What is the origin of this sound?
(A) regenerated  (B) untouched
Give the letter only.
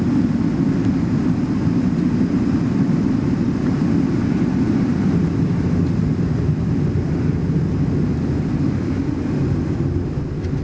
B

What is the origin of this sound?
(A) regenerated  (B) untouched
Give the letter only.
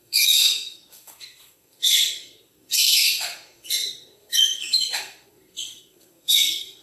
A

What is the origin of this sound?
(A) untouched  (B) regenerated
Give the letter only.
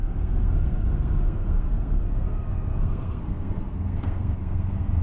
B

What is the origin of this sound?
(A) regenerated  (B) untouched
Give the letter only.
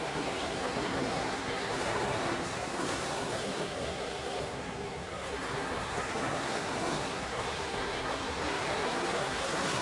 A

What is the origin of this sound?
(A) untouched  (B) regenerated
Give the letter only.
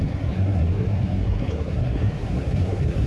B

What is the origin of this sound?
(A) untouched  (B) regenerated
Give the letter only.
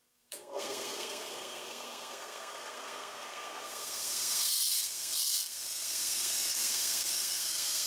B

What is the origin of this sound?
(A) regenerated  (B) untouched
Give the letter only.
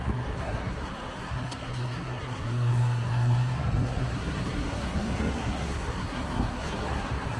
A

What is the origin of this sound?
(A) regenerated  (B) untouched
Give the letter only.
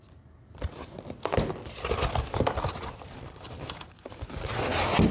B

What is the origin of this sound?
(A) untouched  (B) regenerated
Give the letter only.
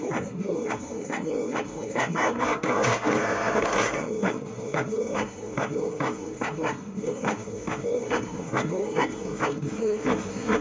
B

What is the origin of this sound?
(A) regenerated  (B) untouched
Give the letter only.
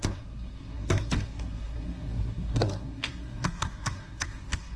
A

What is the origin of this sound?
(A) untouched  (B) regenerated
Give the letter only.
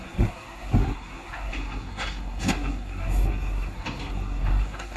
B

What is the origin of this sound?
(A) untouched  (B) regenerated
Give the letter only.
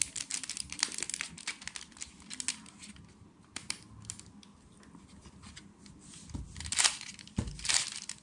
A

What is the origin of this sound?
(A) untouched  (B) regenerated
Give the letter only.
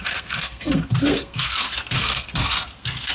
B